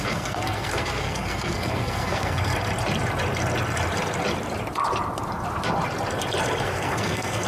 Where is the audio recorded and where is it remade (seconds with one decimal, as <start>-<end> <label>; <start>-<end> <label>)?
0.0-2.5 remade; 2.5-6.6 recorded; 6.6-7.5 remade